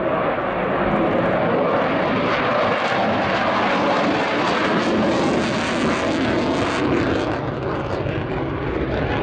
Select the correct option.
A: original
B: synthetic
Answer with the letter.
A